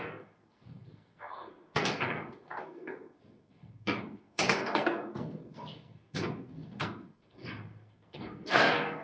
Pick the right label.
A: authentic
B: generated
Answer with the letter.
B